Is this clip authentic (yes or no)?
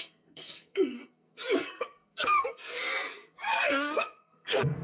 no